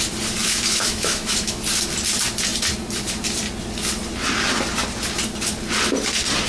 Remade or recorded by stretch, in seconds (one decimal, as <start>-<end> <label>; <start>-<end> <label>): 0.0-0.4 recorded; 0.4-1.6 remade; 1.6-6.5 recorded

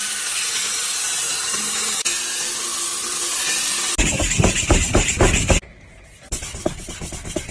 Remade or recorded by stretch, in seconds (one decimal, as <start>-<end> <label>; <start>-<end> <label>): 0.0-7.5 recorded

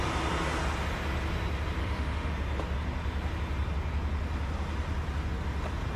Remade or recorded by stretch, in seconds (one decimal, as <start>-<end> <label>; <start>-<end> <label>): 0.0-1.8 recorded; 1.8-2.3 remade; 2.3-6.0 recorded